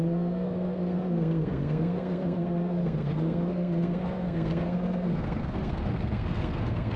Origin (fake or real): fake